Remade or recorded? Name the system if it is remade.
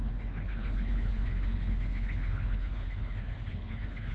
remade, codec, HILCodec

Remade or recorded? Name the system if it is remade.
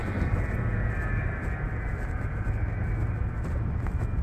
recorded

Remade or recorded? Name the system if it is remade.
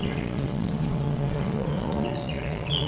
remade, vocoder, Vocos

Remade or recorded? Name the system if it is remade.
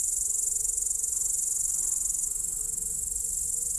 recorded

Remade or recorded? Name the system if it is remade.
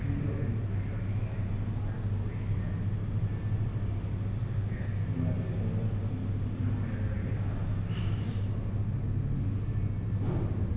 recorded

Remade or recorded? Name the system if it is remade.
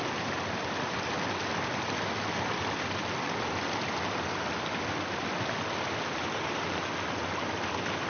recorded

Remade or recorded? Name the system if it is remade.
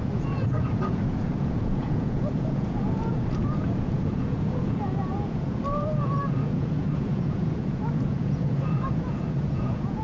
remade, vocoder, Vocos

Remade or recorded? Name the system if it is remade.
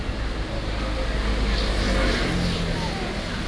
recorded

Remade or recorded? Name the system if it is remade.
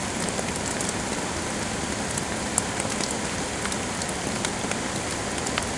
recorded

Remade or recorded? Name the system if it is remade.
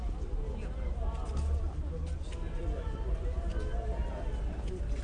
recorded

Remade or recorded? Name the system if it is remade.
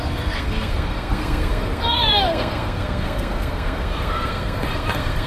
remade, codec, SNAC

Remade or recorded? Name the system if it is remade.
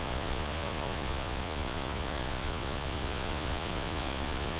remade, vocoder, Vocos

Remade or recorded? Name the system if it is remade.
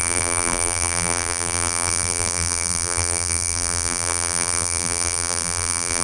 remade, vocoder, BigVGAN v2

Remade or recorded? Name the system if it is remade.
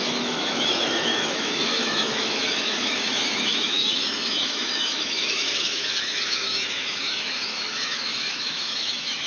remade, autoencoder, DAC-VAE